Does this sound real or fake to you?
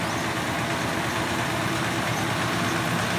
real